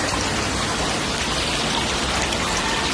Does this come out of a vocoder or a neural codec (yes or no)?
no